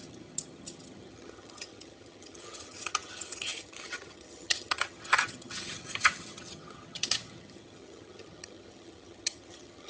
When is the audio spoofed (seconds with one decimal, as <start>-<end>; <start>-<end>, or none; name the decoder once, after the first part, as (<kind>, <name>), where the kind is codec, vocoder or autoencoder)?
0.0-9.9 (vocoder, HiFi-GAN)